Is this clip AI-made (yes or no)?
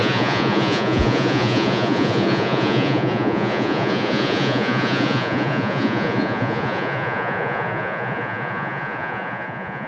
yes